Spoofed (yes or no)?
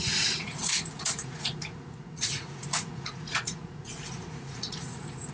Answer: yes